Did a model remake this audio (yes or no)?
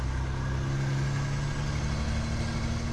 no